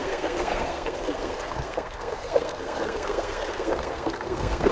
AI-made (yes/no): yes